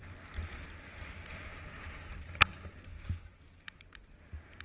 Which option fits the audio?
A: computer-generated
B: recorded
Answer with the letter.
B